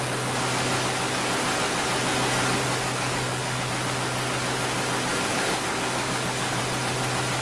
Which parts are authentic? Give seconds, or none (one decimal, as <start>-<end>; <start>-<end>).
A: 0.0-2.6; 3.7-5.1; 6.6-7.4